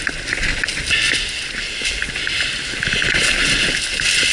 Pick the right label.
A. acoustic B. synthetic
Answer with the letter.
A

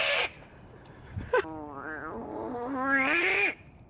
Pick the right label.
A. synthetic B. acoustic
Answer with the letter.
B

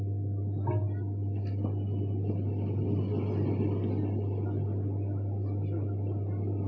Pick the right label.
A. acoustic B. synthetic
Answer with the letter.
A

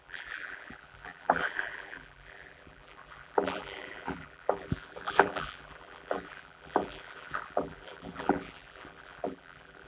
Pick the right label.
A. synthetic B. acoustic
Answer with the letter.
A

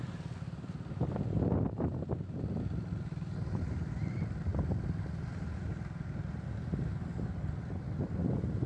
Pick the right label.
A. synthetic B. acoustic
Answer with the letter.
B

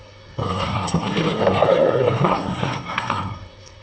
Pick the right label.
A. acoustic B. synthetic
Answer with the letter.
B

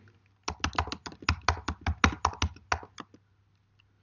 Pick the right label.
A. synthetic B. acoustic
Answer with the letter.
B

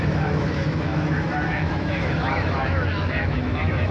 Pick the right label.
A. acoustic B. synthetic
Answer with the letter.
B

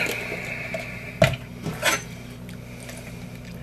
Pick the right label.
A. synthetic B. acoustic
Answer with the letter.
B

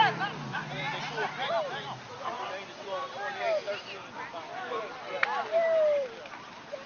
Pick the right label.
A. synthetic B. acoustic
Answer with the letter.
B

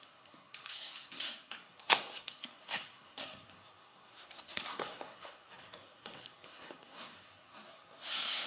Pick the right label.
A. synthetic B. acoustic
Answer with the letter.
A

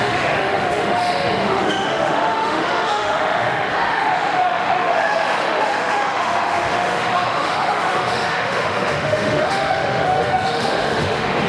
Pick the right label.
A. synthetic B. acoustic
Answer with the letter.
A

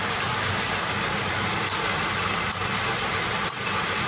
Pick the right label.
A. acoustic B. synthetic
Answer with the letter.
A